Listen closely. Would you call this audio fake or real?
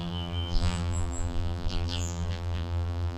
fake